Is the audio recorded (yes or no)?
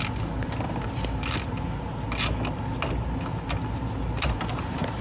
yes